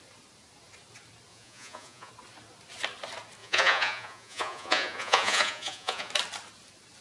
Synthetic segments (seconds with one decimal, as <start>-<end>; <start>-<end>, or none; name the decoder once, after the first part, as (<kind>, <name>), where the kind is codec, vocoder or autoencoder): 1.3-2.1 (vocoder, Vocos); 3.4-6.1